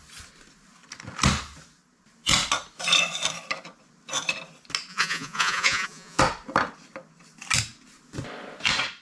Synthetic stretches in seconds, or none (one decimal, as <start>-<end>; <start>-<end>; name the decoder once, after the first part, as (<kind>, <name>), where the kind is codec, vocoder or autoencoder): 4.9-6.2 (vocoder, Vocos)